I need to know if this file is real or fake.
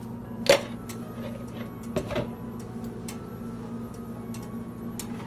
real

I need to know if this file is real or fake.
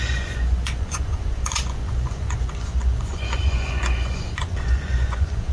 fake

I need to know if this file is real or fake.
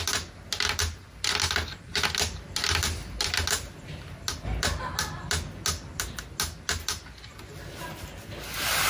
real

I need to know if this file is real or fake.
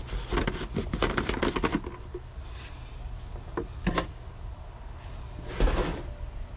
real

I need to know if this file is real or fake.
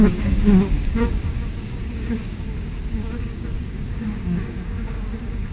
fake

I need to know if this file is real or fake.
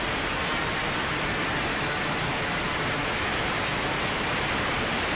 real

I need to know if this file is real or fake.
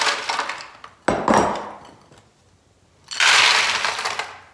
real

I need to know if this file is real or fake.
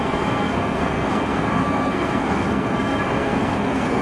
fake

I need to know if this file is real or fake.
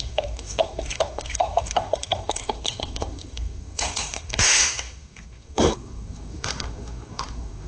fake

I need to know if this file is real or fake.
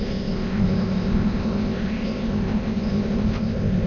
fake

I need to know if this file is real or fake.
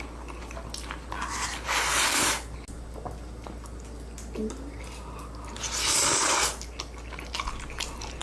real